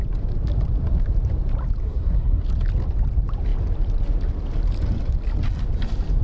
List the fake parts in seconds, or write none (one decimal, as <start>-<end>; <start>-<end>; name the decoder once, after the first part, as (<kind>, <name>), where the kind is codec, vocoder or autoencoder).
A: 1.8-2.4 (codec, SNAC)